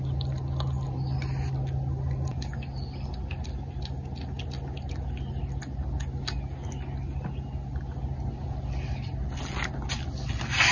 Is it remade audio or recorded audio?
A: recorded